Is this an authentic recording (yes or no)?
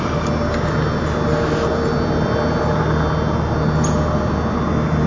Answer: yes